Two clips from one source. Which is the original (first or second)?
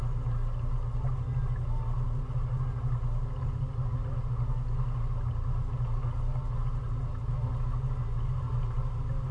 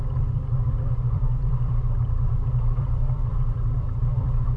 first